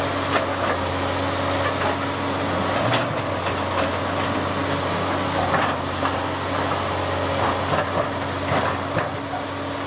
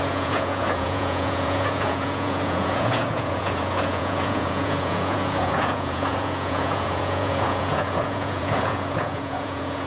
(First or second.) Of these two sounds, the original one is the first